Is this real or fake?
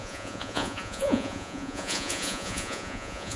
fake